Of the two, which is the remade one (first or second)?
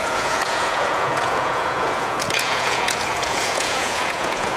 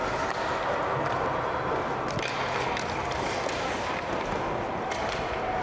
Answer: first